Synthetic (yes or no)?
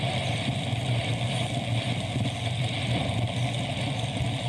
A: no